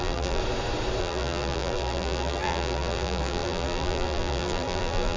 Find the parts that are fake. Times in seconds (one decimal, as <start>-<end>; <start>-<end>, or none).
0.0-0.4; 1.0-5.2